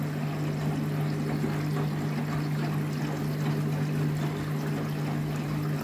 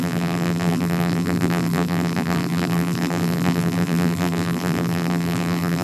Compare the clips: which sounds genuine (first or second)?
first